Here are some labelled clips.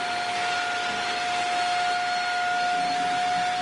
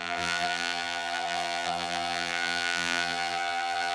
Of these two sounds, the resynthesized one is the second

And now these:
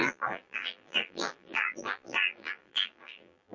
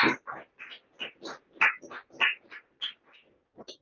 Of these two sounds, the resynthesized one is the first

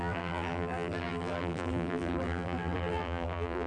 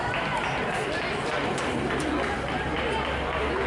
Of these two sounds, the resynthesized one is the first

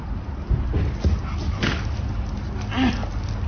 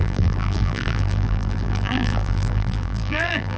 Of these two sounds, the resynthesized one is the second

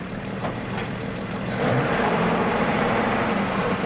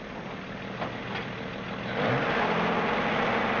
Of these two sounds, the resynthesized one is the first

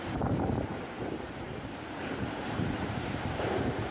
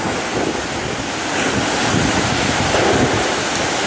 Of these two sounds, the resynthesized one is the first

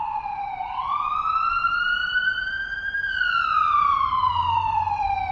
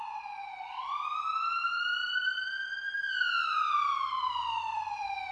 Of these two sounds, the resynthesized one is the first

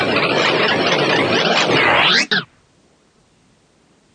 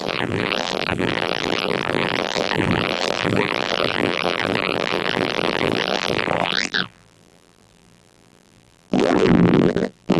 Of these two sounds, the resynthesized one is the second